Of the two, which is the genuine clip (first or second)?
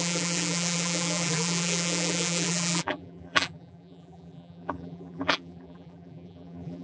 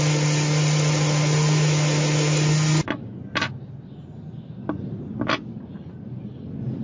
second